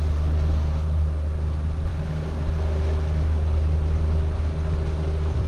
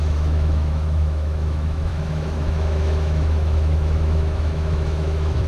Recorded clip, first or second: first